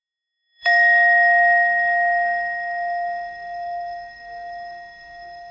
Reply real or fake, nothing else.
fake